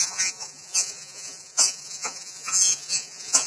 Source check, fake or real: fake